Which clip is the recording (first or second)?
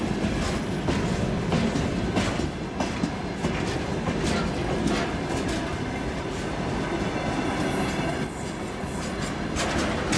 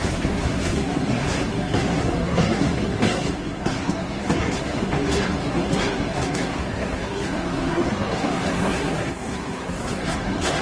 first